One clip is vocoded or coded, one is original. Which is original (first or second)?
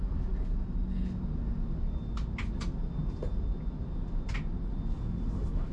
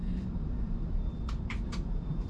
first